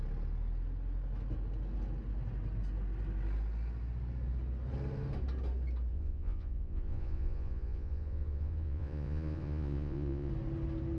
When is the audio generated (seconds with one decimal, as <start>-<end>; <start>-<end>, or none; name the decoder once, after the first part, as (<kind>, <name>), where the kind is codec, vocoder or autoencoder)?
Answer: 5.9-10.3 (vocoder, Vocos)